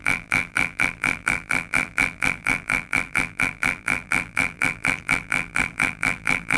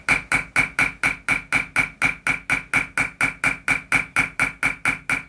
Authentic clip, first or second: second